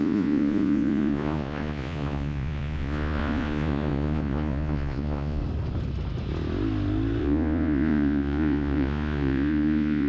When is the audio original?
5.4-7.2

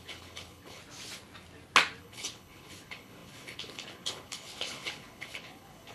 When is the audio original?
0.8-2.0

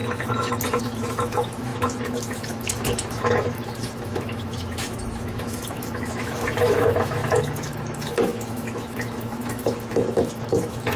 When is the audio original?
none

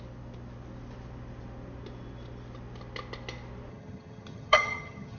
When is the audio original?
0.0-3.7

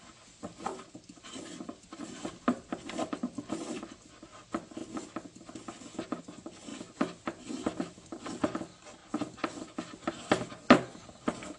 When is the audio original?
0.0-11.6

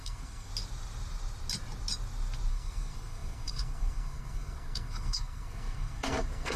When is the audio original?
0.5-2.5

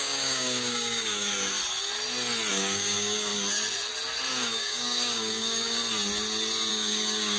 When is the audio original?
1.3-2.5; 3.3-4.3; 5.8-6.7

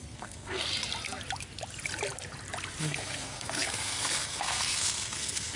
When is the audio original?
0.7-2.8